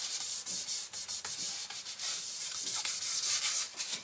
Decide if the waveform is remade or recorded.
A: recorded